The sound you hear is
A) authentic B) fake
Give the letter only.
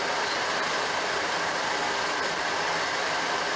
B